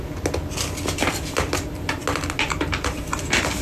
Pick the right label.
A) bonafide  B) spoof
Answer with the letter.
A